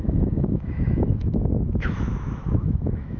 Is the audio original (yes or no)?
no